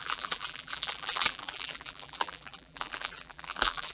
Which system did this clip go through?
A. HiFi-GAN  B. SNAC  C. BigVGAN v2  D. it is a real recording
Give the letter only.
C